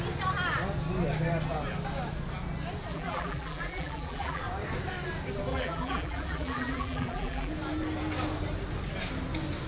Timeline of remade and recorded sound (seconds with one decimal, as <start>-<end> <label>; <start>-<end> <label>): 0.0-2.9 recorded; 2.9-4.4 remade; 4.4-5.5 recorded; 5.5-7.5 remade; 7.5-9.7 recorded